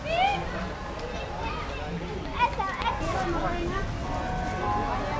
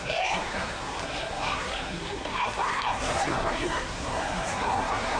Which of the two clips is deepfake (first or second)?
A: second